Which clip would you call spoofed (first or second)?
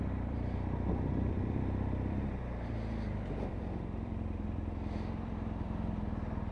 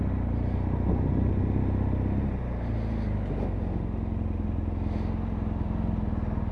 first